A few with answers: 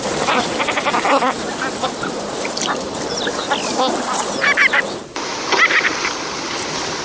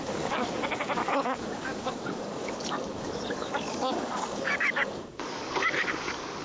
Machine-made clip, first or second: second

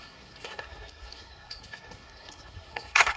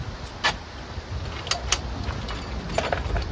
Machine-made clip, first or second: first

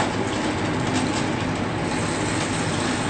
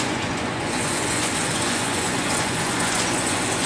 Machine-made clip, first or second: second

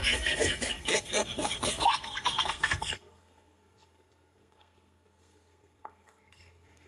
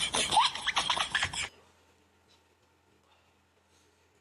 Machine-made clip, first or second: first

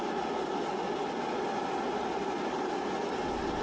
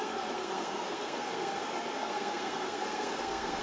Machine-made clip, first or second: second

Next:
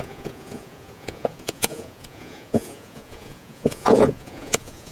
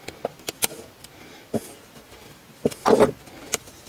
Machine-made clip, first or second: first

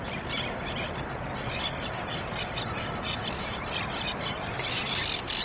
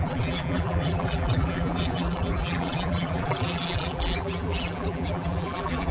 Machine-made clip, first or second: second